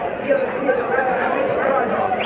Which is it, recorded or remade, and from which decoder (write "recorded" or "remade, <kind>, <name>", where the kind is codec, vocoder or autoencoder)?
remade, vocoder, Vocos